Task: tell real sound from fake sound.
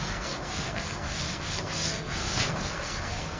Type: fake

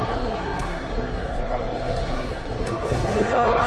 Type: fake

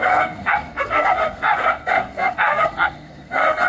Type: fake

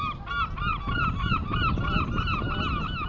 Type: real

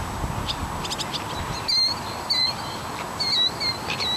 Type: real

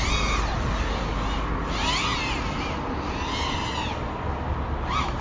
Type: real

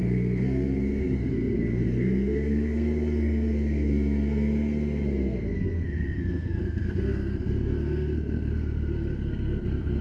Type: fake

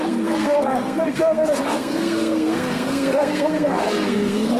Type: fake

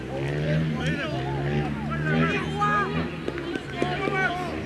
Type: real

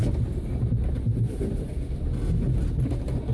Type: real